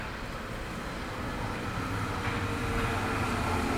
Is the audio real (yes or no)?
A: yes